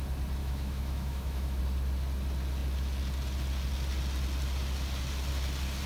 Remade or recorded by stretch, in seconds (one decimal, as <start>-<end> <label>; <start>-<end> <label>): 0.0-0.4 recorded; 0.4-1.6 remade; 1.6-5.9 recorded